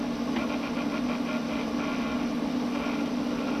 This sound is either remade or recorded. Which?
recorded